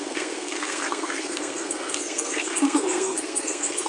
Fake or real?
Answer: fake